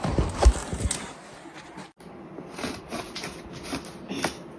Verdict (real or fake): real